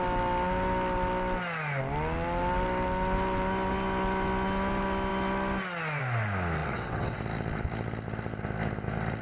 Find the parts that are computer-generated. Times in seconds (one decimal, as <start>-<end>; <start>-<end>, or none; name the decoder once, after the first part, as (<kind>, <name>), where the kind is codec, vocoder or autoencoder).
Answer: 6.6-7.2 (vocoder, WaveNeXt)